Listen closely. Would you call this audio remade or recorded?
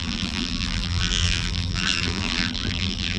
remade